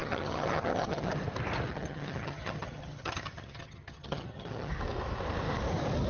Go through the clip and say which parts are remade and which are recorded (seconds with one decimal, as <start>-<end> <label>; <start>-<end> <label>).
0.0-1.1 remade; 1.1-1.7 recorded; 1.7-4.7 remade; 4.7-6.1 recorded